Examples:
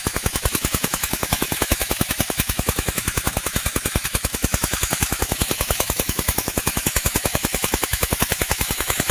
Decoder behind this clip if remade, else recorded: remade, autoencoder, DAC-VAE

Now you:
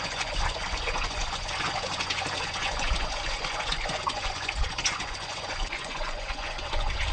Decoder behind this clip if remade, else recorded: remade, vocoder, Vocos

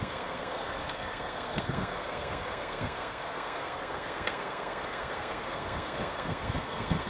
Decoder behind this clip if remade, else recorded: remade, codec, SNAC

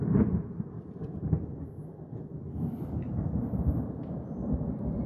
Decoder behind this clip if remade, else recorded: recorded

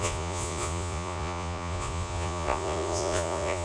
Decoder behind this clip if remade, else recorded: remade, vocoder, Vocos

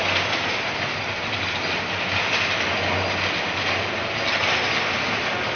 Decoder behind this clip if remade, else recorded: recorded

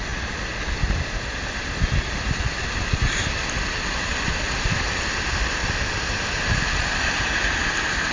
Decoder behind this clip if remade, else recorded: recorded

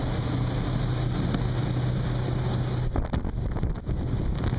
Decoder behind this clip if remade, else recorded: recorded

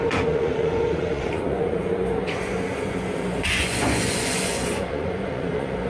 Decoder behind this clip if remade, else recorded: remade, vocoder, Vocos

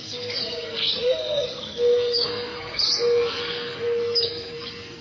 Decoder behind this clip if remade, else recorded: remade, codec, SNAC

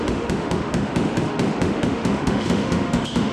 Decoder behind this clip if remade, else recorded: remade, autoencoder, DAC-VAE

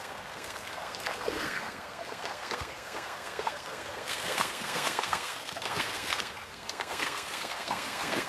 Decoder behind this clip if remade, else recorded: remade, codec, SNAC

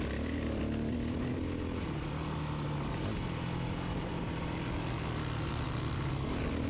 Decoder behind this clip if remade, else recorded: recorded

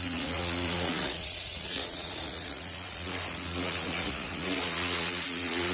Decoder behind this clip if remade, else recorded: remade, vocoder, Vocos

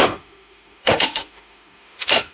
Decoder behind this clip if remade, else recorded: remade, autoencoder, DAC-VAE